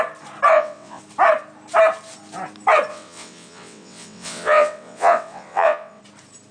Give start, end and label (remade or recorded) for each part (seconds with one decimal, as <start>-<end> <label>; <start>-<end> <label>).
0.0-0.5 recorded; 0.5-1.0 remade; 1.0-2.9 recorded; 2.9-6.0 remade; 6.0-6.5 recorded